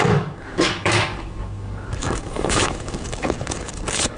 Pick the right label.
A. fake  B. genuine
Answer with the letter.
A